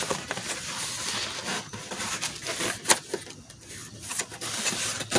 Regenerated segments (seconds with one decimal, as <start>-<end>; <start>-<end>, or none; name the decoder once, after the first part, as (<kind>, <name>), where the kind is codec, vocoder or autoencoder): none